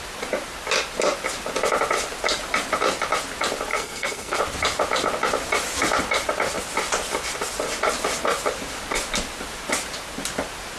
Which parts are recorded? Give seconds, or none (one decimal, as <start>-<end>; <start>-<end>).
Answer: 0.0-3.7; 4.4-10.8